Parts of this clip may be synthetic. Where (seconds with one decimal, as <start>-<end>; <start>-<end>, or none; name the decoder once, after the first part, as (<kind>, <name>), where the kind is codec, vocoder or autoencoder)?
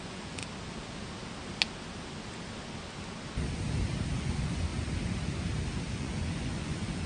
0.0-0.4 (vocoder, Vocos); 4.2-4.7; 5.9-7.1